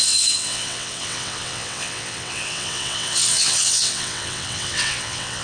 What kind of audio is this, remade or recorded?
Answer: remade